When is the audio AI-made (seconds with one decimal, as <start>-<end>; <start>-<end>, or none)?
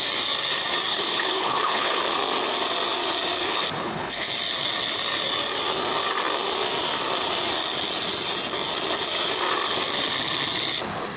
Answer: 0.9-2.0; 3.4-4.3